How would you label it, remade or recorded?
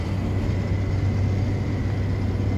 recorded